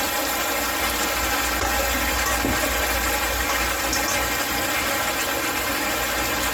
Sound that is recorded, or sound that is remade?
recorded